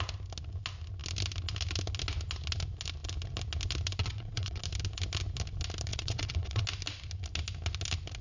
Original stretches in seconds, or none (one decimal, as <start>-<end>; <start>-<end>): 0.0-4.0; 4.6-5.9; 6.6-8.2